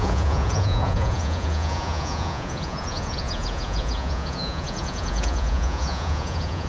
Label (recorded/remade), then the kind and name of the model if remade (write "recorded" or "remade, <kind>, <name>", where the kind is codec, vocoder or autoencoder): remade, vocoder, Vocos